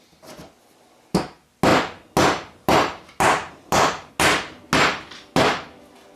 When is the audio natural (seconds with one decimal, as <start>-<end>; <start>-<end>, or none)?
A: 0.0-6.2